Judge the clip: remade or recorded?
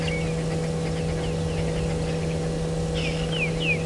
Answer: recorded